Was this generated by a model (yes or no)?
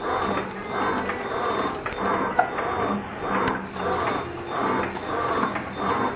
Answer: no